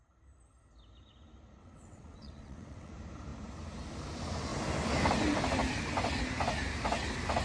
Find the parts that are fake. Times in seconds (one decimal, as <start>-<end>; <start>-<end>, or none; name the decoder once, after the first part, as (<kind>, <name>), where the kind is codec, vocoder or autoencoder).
1.6-2.9 (vocoder, WaveNeXt)